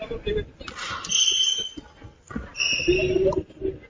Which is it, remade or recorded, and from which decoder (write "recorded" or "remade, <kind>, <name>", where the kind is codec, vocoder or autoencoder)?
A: recorded